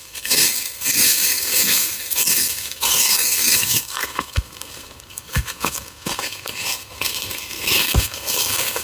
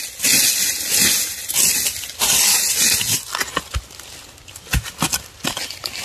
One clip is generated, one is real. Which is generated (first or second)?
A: first